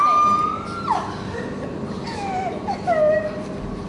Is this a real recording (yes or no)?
yes